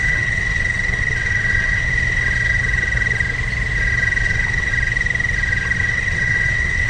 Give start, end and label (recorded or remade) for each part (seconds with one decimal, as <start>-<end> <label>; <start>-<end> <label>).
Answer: 0.0-1.9 remade; 1.9-4.2 recorded; 4.2-4.7 remade; 4.7-5.8 recorded; 5.8-6.9 remade